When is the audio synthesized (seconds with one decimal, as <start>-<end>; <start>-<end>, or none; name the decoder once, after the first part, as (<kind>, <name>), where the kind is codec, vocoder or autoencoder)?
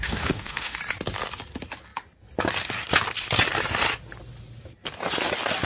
0.0-0.8 (autoencoder, DAC-VAE)